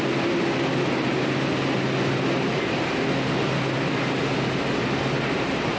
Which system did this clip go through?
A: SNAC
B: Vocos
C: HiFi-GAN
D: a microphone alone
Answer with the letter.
D